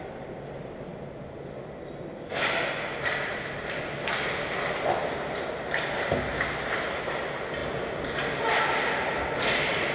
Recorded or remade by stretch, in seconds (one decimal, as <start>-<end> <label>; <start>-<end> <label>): 0.0-9.9 recorded